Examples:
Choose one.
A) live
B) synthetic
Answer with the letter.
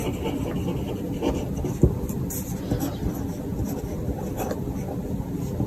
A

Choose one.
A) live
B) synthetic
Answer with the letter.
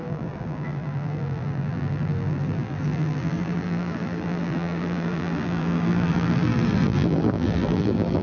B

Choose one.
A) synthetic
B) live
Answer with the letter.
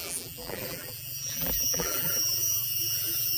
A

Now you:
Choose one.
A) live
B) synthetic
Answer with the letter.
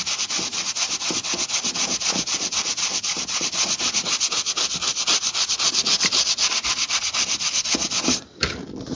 B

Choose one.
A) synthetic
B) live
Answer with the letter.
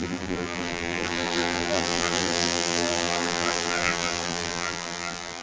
A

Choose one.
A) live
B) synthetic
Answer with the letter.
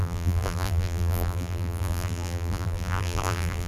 B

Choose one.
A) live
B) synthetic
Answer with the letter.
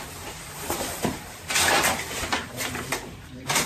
B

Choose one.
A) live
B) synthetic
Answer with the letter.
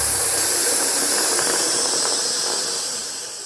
B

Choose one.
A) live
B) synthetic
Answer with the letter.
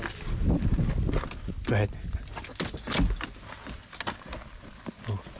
A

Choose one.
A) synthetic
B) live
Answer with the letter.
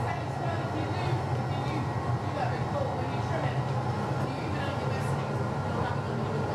B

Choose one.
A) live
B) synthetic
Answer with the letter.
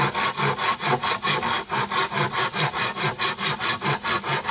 A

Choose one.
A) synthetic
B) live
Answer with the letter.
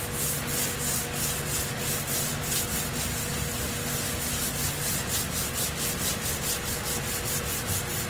B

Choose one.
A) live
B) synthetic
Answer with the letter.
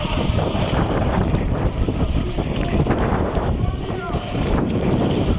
B